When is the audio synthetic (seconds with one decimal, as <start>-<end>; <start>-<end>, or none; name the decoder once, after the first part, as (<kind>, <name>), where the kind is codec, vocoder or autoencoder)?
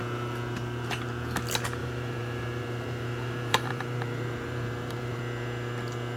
1.8-5.2 (vocoder, BigVGAN v2)